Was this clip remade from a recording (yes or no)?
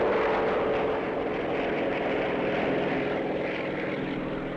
no